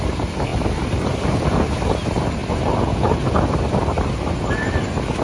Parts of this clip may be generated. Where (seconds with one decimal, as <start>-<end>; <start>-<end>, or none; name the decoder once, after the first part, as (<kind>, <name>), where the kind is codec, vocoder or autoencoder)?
none